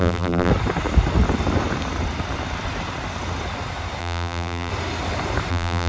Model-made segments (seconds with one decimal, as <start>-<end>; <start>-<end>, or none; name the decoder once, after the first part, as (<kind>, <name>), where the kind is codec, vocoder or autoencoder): 0.0-0.5 (vocoder, BigVGAN v2); 4.0-4.7; 5.5-5.9